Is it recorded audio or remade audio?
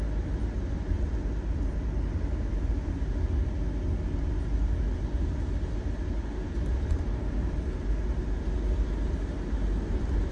recorded